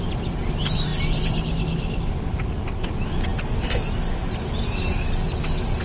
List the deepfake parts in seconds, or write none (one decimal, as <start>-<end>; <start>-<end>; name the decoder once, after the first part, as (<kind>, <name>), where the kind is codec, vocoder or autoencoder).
none